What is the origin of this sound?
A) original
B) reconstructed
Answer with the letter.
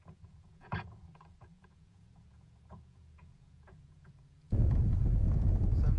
B